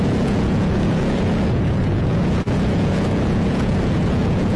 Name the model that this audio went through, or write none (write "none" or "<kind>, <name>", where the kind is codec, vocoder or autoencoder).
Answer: vocoder, Vocos